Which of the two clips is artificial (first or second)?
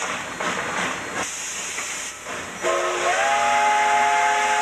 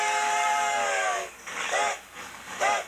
second